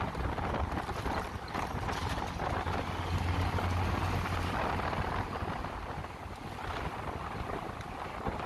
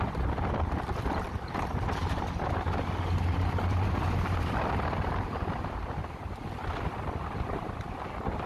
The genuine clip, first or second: first